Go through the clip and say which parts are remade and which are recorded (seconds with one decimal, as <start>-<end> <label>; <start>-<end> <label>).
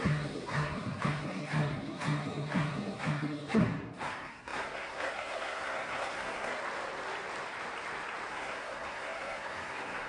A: 0.0-6.5 remade; 6.5-8.3 recorded; 8.3-10.1 remade